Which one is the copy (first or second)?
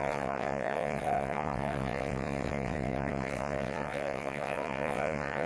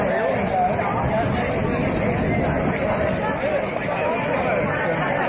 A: first